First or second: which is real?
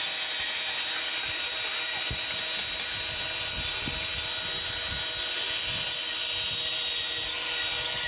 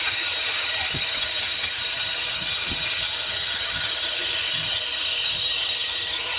first